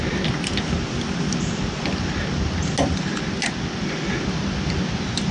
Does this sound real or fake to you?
real